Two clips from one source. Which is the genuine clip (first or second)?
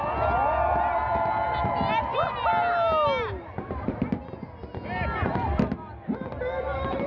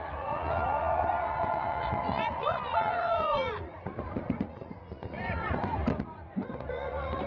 first